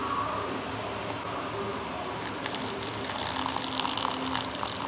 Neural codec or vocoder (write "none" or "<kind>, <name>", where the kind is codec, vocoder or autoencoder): none